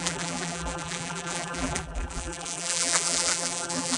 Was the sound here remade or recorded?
remade